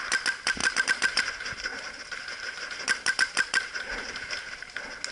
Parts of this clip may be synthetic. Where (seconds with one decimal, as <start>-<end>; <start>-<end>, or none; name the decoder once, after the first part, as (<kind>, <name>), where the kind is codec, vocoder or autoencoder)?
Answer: 0.6-1.2 (vocoder, BigVGAN v2); 1.7-4.3